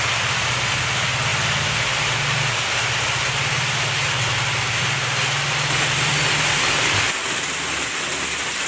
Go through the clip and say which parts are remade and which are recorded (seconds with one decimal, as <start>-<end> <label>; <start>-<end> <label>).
0.0-8.7 recorded